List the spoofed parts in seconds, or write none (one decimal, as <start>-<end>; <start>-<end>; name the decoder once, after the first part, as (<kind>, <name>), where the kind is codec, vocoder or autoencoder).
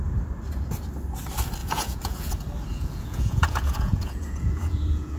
1.6-2.3 (vocoder, Vocos); 2.7-5.2